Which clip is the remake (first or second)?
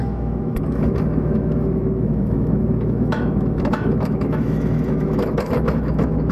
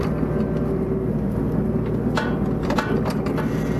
first